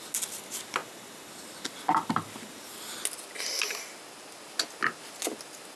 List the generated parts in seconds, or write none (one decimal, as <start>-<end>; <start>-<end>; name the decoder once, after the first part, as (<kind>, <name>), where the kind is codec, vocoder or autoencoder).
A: none